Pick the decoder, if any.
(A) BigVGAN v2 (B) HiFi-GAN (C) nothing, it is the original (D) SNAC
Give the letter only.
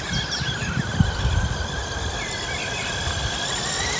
C